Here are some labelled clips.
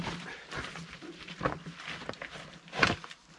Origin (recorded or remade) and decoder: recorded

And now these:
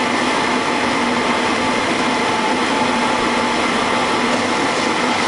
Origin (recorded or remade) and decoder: recorded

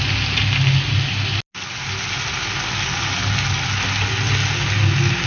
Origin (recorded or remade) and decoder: recorded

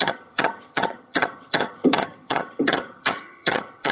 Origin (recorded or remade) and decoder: remade, vocoder, HiFi-GAN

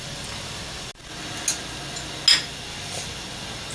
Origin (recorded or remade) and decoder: recorded